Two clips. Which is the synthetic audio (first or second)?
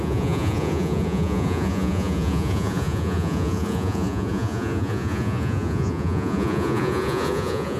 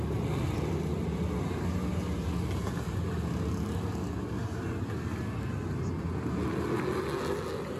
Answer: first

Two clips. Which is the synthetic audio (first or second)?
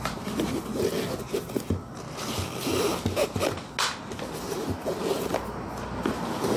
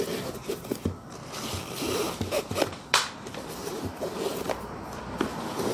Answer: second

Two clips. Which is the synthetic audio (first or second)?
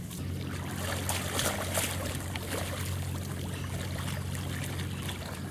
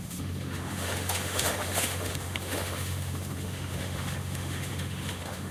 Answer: second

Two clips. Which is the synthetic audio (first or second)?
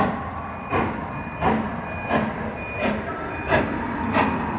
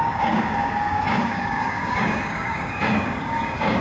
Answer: second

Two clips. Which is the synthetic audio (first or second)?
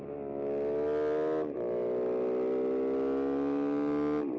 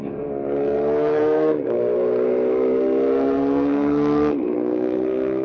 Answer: second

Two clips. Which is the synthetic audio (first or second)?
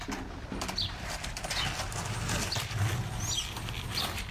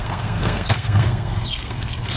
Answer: second